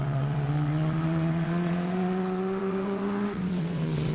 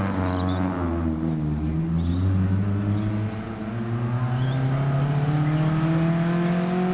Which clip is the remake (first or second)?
first